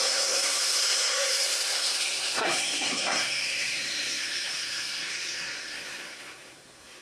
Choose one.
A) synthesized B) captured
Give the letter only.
A